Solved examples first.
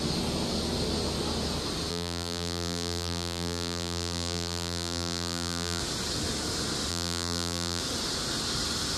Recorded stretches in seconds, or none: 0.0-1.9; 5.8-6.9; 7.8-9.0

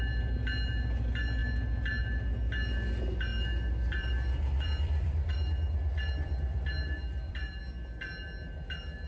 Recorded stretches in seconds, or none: 0.0-3.3; 7.6-9.1

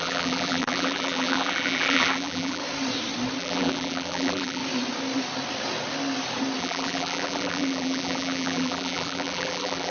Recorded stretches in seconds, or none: 2.6-3.4; 4.6-6.6

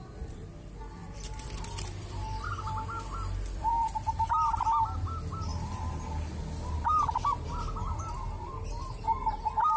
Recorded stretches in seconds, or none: 0.0-1.0; 3.9-9.8